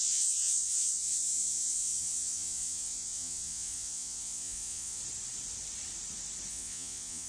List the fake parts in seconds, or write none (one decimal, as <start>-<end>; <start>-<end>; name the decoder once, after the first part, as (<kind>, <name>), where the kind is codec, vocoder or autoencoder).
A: 0.0-5.0 (vocoder, Vocos); 6.5-7.3